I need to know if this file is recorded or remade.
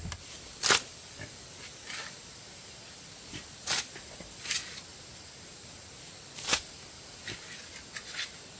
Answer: recorded